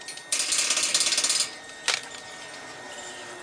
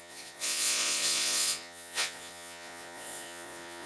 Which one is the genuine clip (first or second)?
first